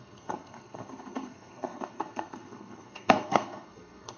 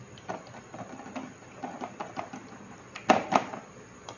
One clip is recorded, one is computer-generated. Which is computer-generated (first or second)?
first